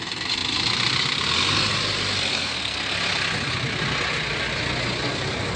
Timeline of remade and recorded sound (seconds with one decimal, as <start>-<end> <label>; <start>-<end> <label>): 0.0-2.3 recorded; 2.3-2.9 remade; 2.9-5.6 recorded